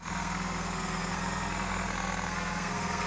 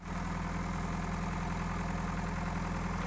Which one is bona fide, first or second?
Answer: second